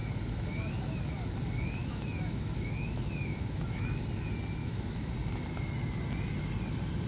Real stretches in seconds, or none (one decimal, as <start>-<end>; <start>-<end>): 0.0-1.8; 4.0-4.6; 5.1-7.1